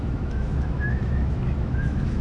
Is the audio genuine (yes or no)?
no